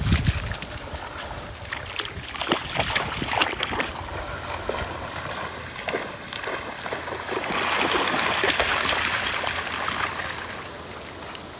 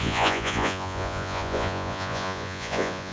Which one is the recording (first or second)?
first